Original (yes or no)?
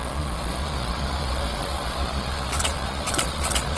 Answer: no